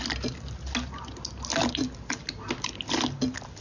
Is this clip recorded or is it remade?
recorded